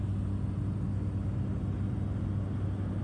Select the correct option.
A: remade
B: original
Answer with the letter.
B